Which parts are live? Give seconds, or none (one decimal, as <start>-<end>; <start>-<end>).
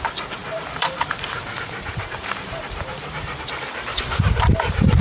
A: 0.0-0.4; 3.4-5.0